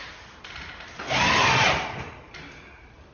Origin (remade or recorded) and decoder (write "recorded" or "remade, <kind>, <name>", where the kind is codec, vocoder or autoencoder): recorded